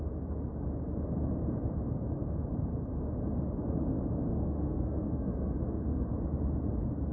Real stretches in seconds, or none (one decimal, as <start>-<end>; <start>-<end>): 0.0-4.3; 6.1-7.1